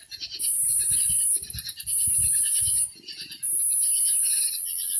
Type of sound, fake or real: real